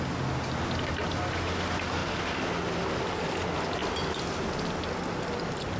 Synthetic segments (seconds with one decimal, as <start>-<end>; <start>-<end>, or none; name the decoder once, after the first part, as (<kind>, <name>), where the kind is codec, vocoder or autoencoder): none